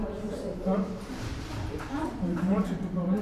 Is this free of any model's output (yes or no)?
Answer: no